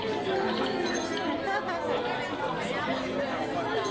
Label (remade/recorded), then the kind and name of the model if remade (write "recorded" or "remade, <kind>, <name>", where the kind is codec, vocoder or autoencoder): recorded